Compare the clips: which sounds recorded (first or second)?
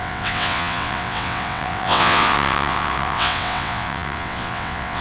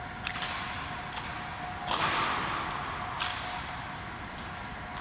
second